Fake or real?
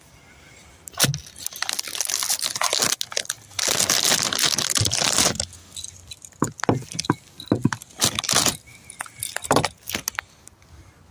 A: real